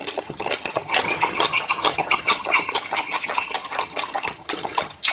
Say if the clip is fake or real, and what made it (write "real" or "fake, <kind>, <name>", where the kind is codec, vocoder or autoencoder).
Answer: fake, vocoder, HiFi-GAN